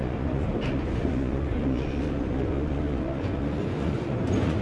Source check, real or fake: fake